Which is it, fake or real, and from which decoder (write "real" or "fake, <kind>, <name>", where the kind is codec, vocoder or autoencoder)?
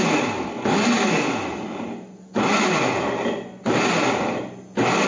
real